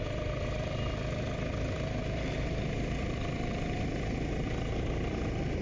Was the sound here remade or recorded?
remade